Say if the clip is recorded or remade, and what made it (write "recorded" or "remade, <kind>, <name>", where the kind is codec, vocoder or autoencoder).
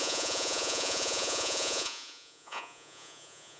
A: remade, vocoder, Vocos